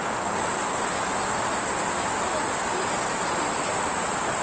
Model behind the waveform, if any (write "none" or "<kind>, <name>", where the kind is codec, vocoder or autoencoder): none